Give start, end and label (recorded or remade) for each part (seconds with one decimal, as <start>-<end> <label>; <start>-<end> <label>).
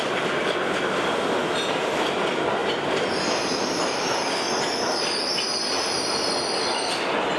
0.0-7.4 recorded